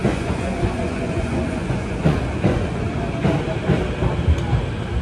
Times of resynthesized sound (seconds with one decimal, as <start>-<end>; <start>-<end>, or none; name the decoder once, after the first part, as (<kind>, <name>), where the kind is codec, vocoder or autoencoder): 0.0-3.0 (vocoder, Vocos)